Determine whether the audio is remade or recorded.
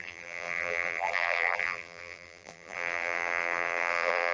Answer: remade